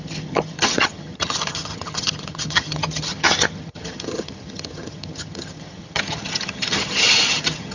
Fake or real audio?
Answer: fake